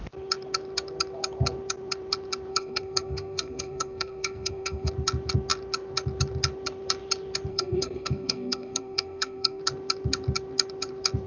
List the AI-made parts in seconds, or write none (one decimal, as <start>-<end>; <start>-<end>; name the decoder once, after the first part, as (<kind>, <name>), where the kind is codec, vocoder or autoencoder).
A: 2.5-4.9 (codec, SNAC); 7.5-9.6